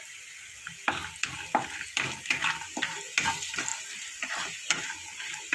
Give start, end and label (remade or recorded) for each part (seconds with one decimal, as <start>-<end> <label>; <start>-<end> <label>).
0.0-5.5 recorded